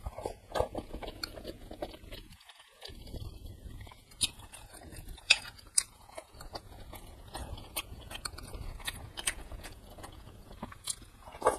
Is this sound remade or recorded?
remade